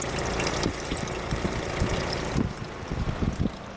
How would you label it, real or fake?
real